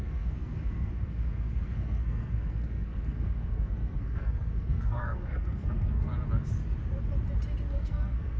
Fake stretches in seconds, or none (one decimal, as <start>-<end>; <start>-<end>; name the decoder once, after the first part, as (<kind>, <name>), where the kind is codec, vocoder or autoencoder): 0.0-6.1 (codec, SNAC); 7.7-8.4